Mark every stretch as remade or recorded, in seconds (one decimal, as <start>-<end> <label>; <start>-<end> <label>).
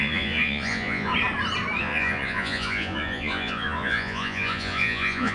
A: 0.0-1.1 remade; 1.1-1.8 recorded; 1.8-5.3 remade